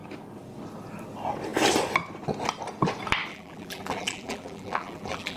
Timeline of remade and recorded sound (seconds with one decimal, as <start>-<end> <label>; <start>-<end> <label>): 0.0-3.3 recorded; 3.3-5.4 remade